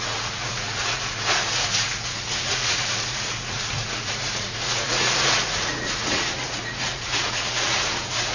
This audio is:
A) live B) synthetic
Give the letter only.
B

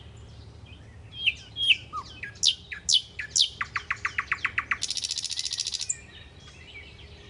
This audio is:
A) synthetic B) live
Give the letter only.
B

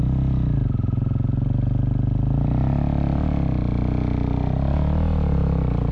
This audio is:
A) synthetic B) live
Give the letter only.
B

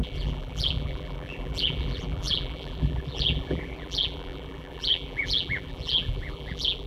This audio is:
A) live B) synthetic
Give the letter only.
B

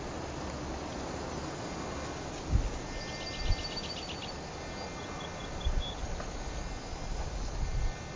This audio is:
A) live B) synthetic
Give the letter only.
A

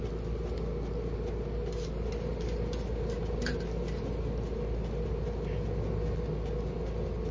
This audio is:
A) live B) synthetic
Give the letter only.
A